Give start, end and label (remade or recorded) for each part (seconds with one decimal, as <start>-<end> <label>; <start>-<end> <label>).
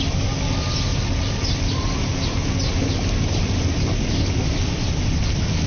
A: 0.0-5.7 recorded